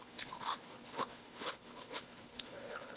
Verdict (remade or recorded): remade